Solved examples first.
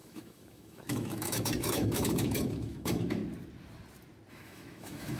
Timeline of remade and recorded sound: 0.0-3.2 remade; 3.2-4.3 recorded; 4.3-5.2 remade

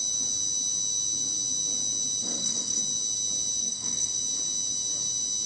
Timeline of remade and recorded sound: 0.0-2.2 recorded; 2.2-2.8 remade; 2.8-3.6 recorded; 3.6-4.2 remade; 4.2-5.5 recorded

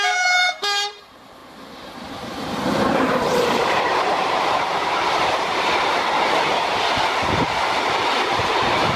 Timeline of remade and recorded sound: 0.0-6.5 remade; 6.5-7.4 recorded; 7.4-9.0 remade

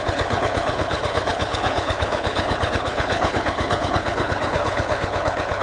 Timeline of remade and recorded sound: 0.0-5.6 remade